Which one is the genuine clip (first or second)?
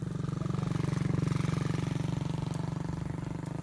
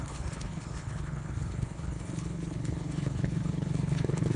first